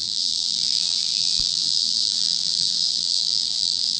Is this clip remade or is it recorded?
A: remade